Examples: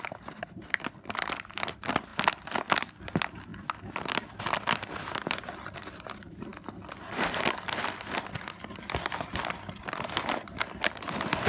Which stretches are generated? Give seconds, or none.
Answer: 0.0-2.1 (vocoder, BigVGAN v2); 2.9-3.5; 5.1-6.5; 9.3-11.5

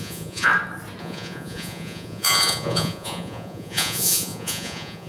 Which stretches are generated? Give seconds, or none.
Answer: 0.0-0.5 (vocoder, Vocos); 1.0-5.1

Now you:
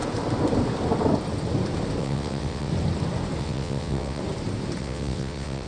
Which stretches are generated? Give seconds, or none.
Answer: 2.0-2.7 (vocoder, WaveNeXt); 3.4-4.2; 4.8-5.7

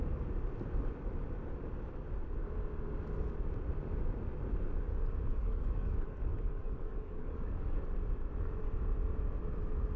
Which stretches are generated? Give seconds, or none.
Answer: 5.3-7.8 (codec, DAC)

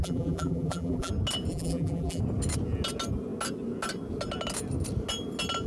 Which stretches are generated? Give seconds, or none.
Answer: 0.0-1.1 (vocoder, BigVGAN v2); 1.5-2.2

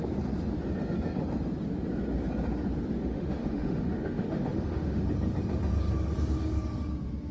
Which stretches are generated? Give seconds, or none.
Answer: 3.0-5.0 (autoencoder, DAC-VAE)